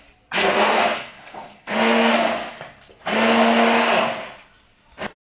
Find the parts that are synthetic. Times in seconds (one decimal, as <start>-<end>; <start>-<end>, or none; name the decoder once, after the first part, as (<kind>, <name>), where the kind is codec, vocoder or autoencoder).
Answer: 0.4-2.5 (codec, SNAC)